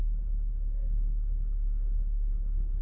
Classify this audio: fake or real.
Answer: fake